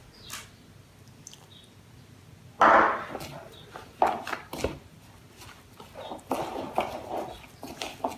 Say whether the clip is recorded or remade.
recorded